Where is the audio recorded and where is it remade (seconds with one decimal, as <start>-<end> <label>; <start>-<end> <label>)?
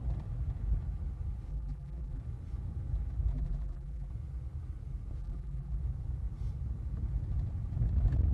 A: 0.0-1.5 recorded; 1.5-2.2 remade; 2.2-3.3 recorded; 3.3-4.1 remade; 4.1-5.2 recorded; 5.2-5.8 remade; 5.8-8.3 recorded